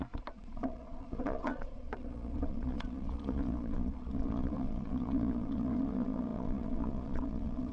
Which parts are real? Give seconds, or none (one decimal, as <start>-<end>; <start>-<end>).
none